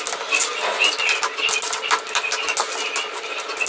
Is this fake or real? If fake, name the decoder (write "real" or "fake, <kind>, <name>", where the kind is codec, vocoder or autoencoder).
real